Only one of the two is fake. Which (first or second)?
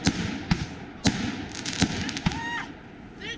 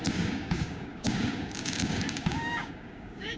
second